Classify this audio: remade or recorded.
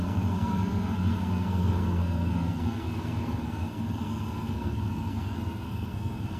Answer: remade